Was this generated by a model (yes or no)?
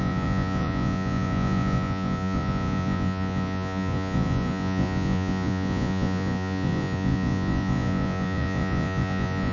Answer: yes